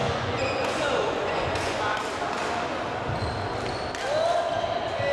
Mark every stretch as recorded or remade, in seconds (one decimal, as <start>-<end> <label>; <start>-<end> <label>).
0.0-2.0 remade; 2.0-5.1 recorded